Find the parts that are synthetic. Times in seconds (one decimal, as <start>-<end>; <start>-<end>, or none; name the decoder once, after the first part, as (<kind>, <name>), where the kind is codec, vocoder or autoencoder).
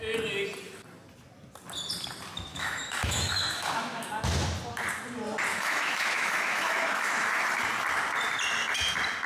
2.5-4.1 (autoencoder, DAC-VAE); 5.5-7.5